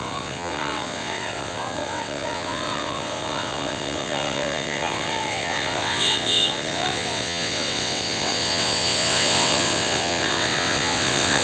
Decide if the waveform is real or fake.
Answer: fake